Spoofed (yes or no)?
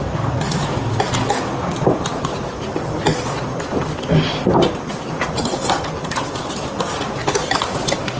no